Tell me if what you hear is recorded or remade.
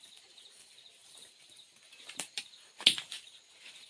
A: remade